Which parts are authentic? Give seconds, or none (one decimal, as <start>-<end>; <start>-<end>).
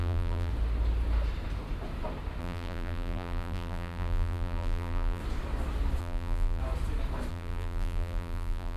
0.5-2.4; 5.2-6.0; 6.6-7.3